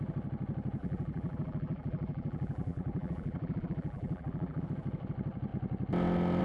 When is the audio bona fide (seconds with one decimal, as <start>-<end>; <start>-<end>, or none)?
0.0-0.8; 4.6-6.4